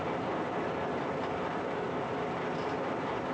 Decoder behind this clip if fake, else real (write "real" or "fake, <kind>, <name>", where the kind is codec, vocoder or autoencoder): real